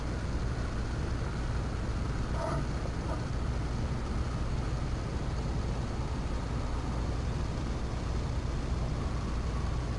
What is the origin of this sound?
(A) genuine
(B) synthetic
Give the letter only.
A